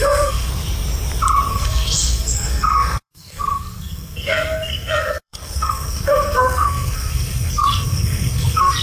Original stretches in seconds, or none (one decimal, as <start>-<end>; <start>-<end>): 0.5-1.5